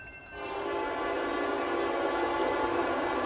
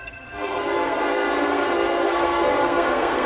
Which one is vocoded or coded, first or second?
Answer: second